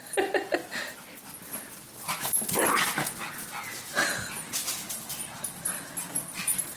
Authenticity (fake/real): real